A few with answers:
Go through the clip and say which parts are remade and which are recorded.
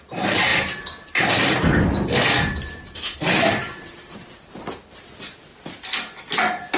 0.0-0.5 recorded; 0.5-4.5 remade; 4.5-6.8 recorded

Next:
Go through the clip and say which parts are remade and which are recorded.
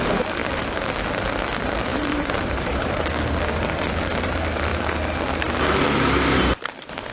0.0-1.9 recorded; 1.9-3.0 remade; 3.0-7.1 recorded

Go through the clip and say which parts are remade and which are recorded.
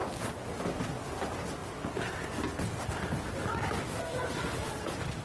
0.0-5.2 recorded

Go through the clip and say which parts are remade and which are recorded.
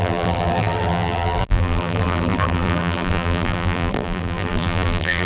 0.0-5.3 remade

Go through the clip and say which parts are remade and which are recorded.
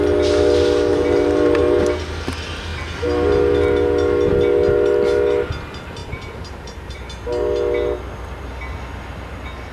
0.0-0.9 recorded; 0.9-1.8 remade; 1.8-6.0 recorded; 6.0-7.0 remade; 7.0-9.7 recorded